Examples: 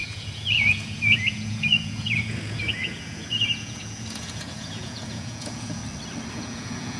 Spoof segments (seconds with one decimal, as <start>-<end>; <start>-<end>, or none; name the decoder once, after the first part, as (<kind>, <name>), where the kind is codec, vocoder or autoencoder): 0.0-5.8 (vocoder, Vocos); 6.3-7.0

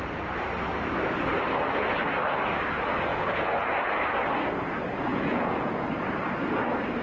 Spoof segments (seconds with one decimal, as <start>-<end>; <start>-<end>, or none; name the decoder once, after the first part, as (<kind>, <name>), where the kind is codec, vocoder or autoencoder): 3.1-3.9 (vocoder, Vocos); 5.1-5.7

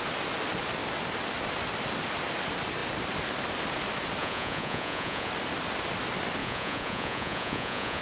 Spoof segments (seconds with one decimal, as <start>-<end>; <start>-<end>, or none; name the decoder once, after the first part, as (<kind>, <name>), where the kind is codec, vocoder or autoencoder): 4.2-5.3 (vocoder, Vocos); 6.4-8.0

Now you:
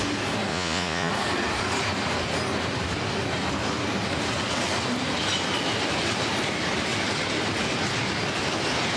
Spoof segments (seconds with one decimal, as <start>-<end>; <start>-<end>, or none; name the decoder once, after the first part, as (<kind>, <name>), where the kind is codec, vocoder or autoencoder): 0.5-1.1 (vocoder, Vocos)

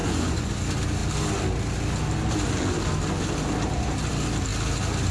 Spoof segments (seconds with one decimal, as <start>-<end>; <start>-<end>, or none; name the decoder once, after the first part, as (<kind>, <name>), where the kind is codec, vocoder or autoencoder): 0.0-0.5 (vocoder, Vocos)

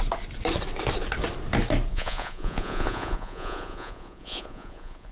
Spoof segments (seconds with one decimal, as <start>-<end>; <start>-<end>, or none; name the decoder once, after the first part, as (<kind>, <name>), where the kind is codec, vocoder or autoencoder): 1.9-5.1 (vocoder, Vocos)

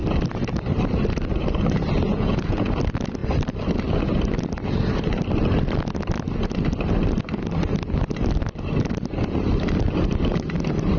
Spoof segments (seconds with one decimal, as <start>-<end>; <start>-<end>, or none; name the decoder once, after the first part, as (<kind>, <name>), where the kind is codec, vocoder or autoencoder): 2.1-2.7 (vocoder, Vocos)